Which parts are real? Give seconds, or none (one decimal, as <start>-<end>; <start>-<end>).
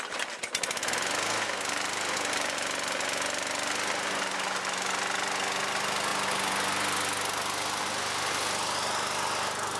0.0-9.8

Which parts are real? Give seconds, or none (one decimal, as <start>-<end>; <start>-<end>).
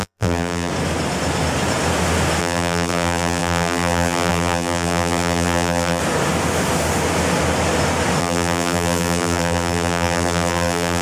0.7-2.4; 6.0-8.2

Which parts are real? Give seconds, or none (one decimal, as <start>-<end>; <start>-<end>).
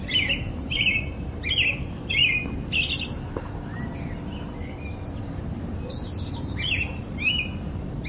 2.2-5.7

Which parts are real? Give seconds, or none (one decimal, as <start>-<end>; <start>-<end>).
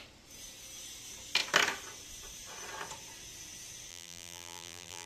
0.0-3.9